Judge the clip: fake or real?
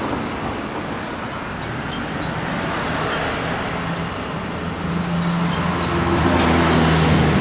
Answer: real